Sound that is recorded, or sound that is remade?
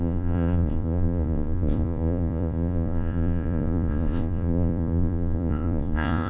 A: remade